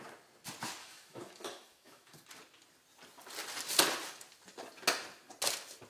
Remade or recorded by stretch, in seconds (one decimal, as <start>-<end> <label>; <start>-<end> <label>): 0.0-0.8 recorded; 0.8-2.2 remade; 2.2-5.9 recorded